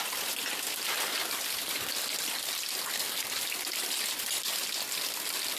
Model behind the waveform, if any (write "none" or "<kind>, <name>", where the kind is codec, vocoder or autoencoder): none